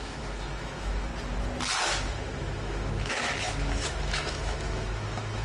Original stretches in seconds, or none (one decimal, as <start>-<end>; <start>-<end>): 1.1-1.8